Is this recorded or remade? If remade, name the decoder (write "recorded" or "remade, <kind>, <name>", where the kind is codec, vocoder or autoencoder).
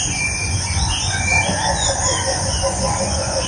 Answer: remade, vocoder, Vocos